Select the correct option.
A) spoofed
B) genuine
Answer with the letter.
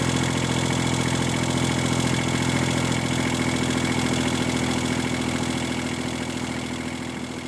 B